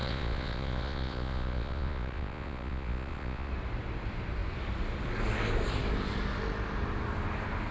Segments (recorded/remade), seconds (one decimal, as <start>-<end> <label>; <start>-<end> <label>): 0.0-3.5 remade; 3.5-7.7 recorded